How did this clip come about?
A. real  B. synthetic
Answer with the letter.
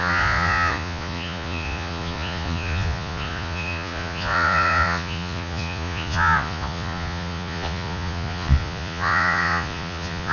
B